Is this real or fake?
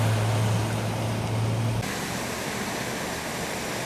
real